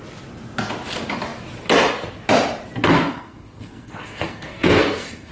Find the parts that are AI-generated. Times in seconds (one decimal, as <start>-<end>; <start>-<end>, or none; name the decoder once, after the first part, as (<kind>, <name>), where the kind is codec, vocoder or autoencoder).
2.9-5.3 (codec, SNAC)